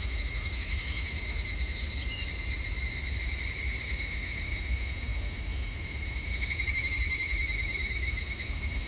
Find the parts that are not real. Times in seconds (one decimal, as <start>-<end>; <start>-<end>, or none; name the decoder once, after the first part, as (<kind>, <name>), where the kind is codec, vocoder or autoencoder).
0.0-2.2 (autoencoder, DAC-VAE); 3.8-8.9